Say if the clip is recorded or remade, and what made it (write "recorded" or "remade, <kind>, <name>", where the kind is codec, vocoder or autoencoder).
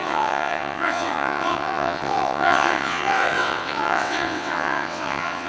remade, vocoder, WaveNeXt